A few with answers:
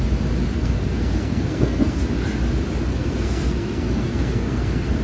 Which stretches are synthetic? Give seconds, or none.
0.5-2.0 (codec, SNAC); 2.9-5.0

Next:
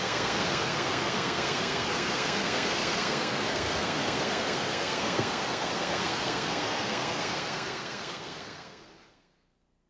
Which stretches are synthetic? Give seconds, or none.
0.0-9.9 (codec, SNAC)

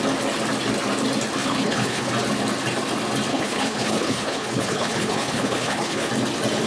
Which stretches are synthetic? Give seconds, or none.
1.4-2.1 (codec, HILCodec); 3.3-6.1

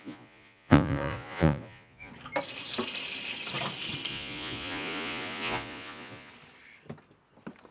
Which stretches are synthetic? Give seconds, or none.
0.0-2.1 (vocoder, Vocos); 4.1-6.3